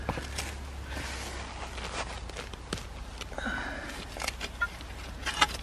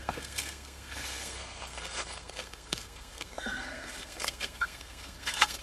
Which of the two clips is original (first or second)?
first